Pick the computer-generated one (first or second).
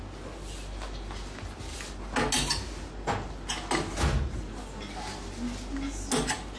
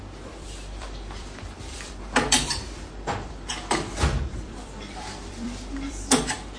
second